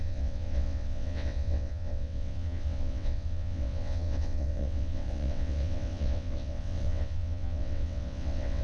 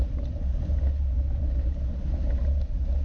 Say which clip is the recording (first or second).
second